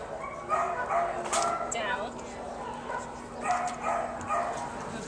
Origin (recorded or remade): recorded